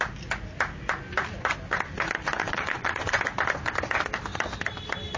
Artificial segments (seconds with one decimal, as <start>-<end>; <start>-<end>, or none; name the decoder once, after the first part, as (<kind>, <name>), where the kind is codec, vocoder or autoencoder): 2.4-3.2 (vocoder, Vocos)